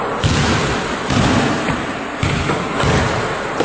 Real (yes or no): yes